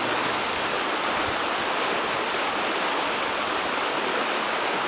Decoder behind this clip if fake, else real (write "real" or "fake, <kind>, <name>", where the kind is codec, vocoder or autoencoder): real